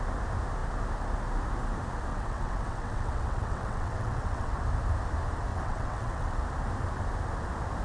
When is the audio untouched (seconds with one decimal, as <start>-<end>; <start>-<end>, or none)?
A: 0.0-2.1; 4.6-5.5; 6.4-7.8